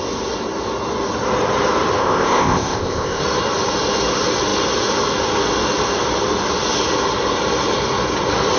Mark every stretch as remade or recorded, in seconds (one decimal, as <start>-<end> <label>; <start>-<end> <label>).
0.0-2.0 recorded; 2.0-3.2 remade; 3.2-8.6 recorded